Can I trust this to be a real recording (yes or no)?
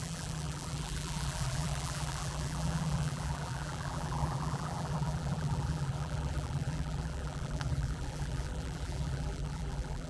no